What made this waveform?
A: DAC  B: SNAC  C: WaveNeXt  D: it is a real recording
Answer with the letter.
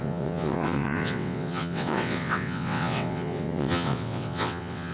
C